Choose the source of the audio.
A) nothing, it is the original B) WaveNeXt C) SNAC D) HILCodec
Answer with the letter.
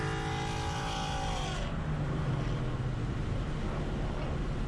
A